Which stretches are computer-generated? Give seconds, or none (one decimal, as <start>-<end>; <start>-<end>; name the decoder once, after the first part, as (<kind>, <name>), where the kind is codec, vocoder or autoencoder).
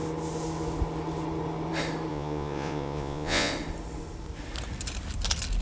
2.1-3.5 (vocoder, Vocos)